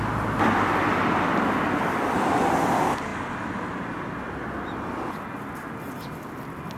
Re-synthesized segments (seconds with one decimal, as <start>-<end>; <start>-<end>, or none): none